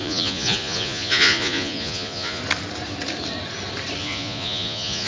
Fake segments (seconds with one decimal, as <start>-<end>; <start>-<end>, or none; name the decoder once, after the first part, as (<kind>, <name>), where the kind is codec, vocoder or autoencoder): 0.0-2.4 (vocoder, Vocos); 4.0-5.1